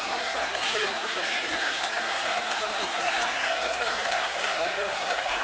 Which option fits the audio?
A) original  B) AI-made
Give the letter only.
B